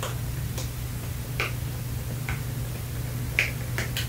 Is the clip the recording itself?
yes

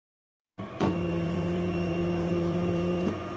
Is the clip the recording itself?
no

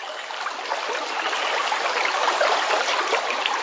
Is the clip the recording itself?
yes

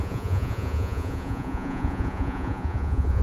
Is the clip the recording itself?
no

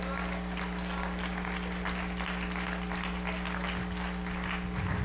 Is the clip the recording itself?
yes